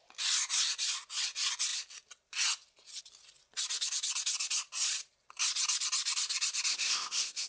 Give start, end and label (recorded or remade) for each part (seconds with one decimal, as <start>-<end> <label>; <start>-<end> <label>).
0.0-6.7 recorded; 6.7-7.5 remade